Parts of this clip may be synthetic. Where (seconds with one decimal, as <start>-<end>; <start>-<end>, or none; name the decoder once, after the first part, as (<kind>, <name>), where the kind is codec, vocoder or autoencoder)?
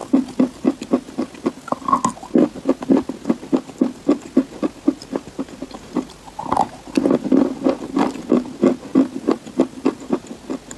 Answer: 0.0-1.5 (vocoder, BigVGAN v2); 8.9-10.0